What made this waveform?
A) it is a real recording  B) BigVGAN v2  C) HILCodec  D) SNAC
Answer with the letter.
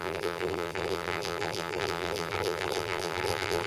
B